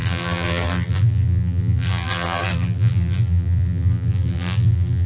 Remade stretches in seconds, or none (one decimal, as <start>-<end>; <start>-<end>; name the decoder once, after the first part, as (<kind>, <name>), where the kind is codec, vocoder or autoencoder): 0.0-5.1 (vocoder, BigVGAN v2)